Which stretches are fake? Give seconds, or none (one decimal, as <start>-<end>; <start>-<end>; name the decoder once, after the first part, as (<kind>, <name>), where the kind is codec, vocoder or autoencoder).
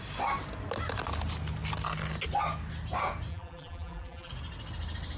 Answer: 3.3-4.3 (vocoder, BigVGAN v2)